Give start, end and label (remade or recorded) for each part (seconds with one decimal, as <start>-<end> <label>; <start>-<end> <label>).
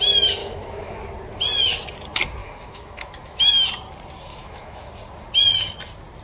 0.0-0.4 recorded; 0.4-1.0 remade; 1.0-2.4 recorded; 2.4-3.7 remade; 3.7-4.3 recorded; 4.3-4.9 remade; 4.9-6.2 recorded